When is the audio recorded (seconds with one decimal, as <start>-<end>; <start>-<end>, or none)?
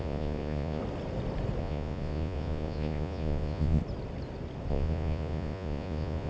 0.8-1.6; 3.8-4.7